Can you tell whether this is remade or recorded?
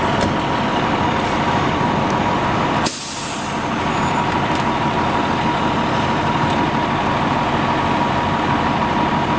recorded